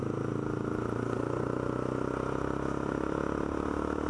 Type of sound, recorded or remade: recorded